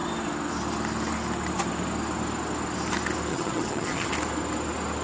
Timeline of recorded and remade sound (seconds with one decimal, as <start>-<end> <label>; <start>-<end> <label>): 0.0-3.3 recorded; 3.3-4.1 remade; 4.1-5.0 recorded